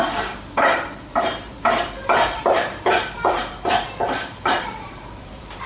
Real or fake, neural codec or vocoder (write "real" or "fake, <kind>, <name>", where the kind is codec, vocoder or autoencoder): fake, vocoder, BigVGAN v2